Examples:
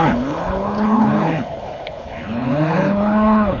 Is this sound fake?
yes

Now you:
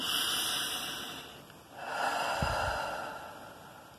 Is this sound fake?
no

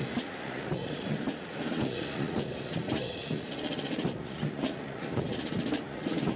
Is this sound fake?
yes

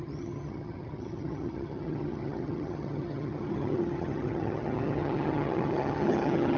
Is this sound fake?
yes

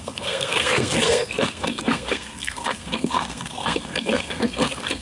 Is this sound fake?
yes